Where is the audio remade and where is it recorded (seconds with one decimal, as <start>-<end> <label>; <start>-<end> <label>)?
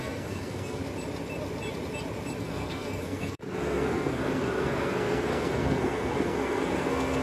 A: 0.0-0.8 remade; 0.8-2.4 recorded; 2.4-7.2 remade